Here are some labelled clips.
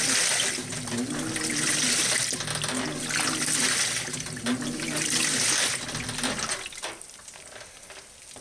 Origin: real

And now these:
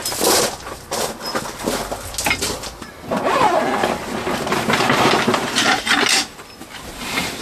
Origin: real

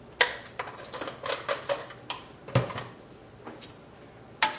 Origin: real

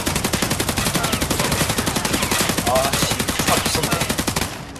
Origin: fake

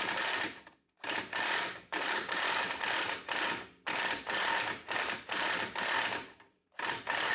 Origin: fake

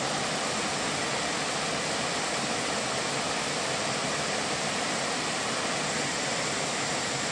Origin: real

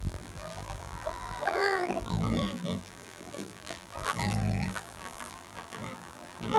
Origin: fake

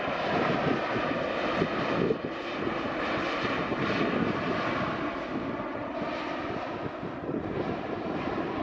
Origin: real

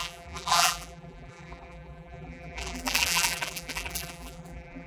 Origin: fake